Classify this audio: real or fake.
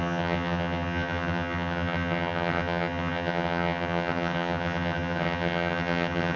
fake